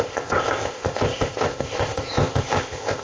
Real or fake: fake